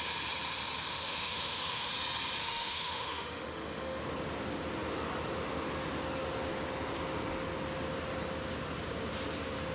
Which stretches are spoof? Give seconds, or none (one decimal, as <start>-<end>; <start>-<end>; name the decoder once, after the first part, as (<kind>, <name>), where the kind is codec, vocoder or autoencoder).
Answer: 0.9-1.9 (autoencoder, DAC-VAE); 2.4-4.0